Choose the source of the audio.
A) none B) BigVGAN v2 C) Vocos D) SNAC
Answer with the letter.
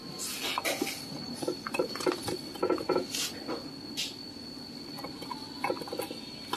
A